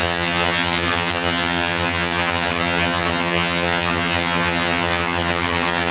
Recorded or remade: remade